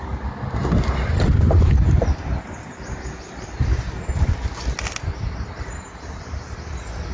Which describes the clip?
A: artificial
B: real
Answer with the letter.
B